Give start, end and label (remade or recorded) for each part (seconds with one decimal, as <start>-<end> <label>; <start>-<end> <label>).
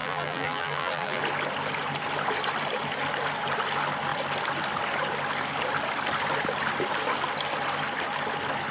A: 0.0-1.2 remade; 1.2-8.7 recorded